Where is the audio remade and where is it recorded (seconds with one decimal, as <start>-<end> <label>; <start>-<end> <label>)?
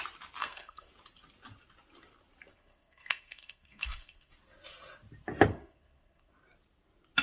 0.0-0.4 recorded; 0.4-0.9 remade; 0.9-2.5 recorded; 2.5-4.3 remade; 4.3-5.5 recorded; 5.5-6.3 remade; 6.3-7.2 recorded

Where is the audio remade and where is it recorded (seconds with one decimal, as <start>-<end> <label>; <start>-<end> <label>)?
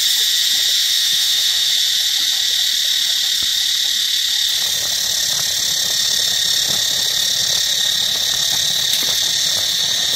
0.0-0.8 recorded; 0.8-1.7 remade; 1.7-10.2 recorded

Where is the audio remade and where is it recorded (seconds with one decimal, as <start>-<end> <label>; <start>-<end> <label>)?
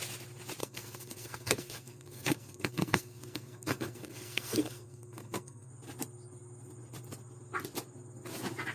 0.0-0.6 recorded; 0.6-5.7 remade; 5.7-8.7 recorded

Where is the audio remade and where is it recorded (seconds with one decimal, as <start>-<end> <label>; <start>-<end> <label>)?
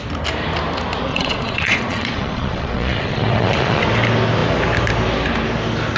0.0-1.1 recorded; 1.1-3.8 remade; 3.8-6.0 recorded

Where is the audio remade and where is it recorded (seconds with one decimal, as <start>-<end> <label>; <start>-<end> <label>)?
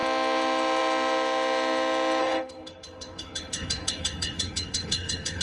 0.0-2.2 recorded; 2.2-5.4 remade